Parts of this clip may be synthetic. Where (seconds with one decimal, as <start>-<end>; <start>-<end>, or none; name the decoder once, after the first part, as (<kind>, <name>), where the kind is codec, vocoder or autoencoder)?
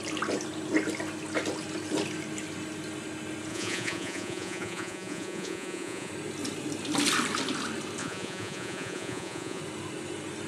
3.5-6.1 (vocoder, Vocos); 8.0-9.6